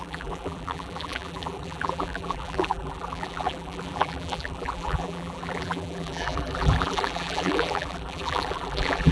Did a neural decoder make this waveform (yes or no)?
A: yes